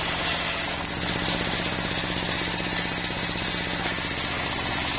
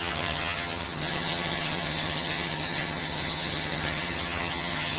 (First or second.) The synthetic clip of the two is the second